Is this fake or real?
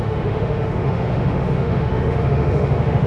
fake